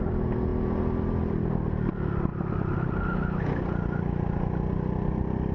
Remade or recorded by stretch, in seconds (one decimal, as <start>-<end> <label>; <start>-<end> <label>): 0.0-5.5 recorded